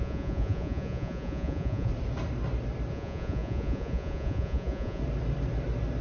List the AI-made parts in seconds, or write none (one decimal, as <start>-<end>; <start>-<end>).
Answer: 0.0-1.9; 2.9-5.0